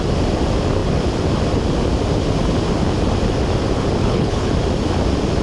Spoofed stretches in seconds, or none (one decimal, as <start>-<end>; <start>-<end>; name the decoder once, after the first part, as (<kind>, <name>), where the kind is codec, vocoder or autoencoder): 4.0-4.5 (codec, HILCodec)